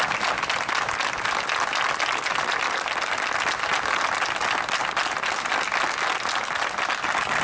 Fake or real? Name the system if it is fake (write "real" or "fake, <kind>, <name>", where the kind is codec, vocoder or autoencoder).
real